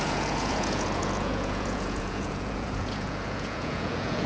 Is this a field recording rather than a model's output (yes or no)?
no